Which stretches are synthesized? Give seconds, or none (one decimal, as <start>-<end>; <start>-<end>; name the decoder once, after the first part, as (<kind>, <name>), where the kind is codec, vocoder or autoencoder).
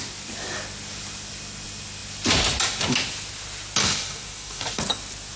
3.8-4.8 (codec, DAC)